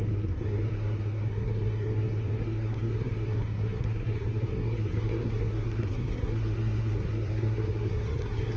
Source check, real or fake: fake